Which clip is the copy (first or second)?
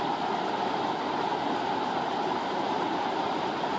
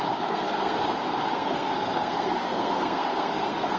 second